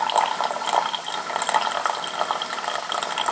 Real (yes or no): yes